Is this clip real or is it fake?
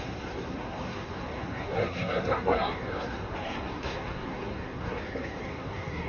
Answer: fake